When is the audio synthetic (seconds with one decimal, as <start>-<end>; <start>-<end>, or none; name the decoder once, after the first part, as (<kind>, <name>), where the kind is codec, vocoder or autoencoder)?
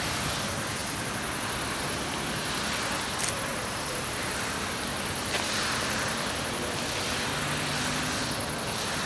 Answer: 3.5-4.3 (vocoder, BigVGAN v2)